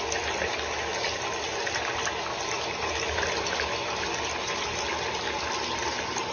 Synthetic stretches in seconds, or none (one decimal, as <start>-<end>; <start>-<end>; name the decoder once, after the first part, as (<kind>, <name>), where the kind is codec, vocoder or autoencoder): none